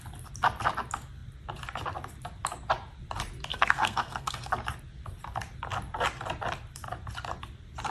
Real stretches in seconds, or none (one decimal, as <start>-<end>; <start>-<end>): 0.0-3.5; 4.5-7.9